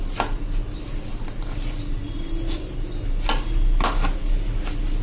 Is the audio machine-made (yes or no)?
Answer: no